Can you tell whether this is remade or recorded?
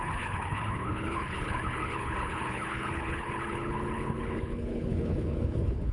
remade